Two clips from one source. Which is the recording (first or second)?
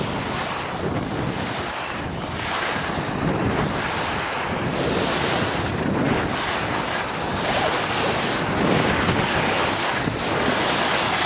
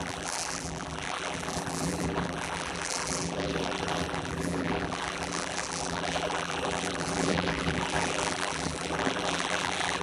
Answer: first